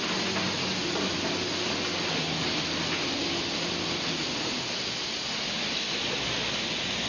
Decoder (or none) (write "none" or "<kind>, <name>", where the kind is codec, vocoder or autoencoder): none